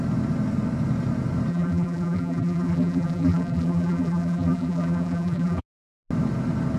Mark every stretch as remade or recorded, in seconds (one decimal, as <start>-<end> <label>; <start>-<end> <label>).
0.0-1.5 recorded; 1.5-5.6 remade; 5.6-6.8 recorded